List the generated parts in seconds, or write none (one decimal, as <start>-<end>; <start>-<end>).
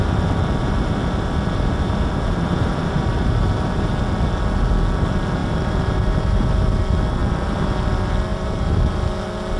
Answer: 0.6-3.9; 5.4-6.8; 8.3-8.9